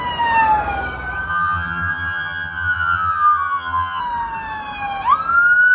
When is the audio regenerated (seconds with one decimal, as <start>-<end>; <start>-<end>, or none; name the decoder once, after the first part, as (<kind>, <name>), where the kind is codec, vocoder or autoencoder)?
1.3-4.0 (vocoder, HiFi-GAN)